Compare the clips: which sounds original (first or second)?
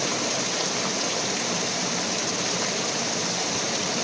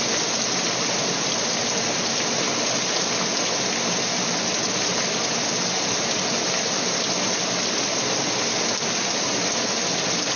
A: second